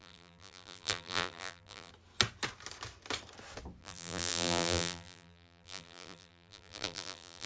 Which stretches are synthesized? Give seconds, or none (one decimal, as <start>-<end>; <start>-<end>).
0.0-1.9; 3.8-7.5